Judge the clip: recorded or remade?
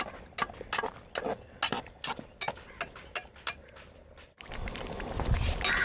recorded